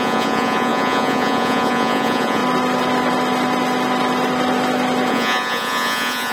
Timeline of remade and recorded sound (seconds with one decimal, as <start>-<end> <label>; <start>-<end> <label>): 0.0-2.4 remade; 2.4-5.1 recorded; 5.1-6.3 remade